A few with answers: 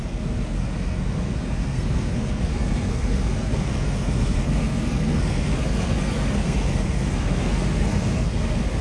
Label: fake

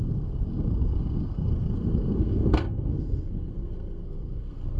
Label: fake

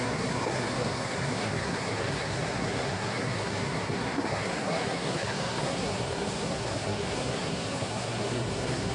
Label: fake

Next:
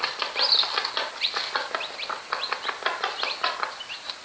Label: real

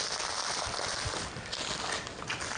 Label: real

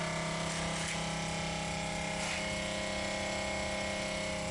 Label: real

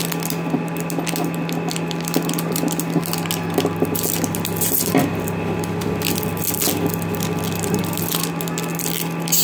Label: real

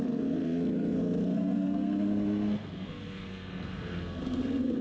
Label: fake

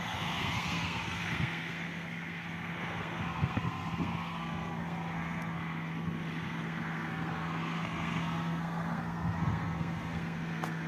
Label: fake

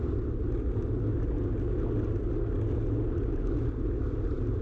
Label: real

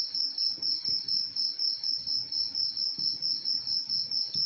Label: real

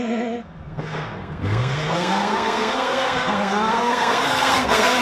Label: fake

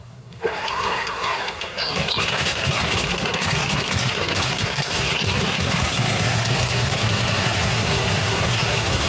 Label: fake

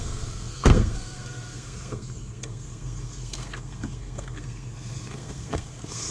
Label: fake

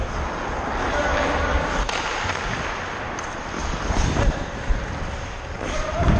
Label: real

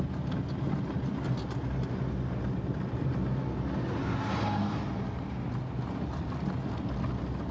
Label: real